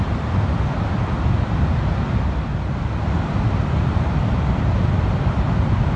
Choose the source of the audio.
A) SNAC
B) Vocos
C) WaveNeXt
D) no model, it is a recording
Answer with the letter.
D